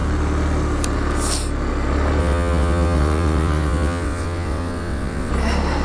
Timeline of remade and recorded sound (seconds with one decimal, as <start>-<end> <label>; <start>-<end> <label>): 0.0-2.2 recorded; 2.2-5.3 remade; 5.3-5.8 recorded